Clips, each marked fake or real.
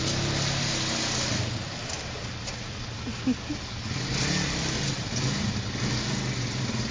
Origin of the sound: real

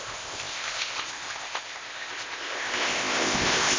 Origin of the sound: fake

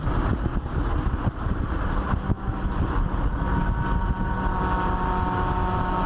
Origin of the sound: real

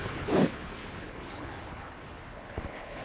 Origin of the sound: fake